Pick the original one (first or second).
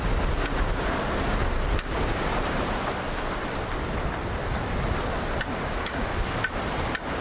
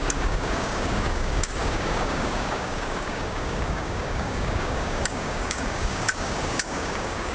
first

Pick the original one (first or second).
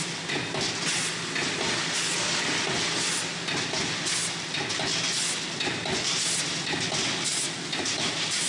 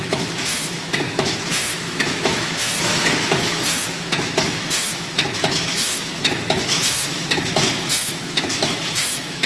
first